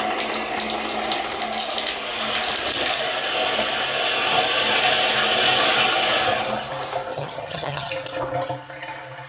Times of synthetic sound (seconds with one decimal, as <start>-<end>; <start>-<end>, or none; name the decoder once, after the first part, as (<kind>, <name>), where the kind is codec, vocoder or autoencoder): 7.1-7.9 (vocoder, HiFi-GAN)